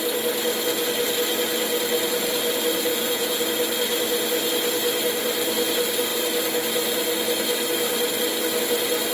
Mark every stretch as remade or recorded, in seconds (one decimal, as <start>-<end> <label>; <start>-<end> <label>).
0.0-2.9 recorded; 2.9-3.4 remade; 3.4-9.1 recorded